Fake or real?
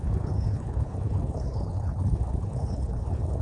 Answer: fake